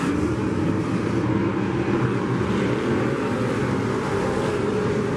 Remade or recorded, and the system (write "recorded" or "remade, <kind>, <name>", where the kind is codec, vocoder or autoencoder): recorded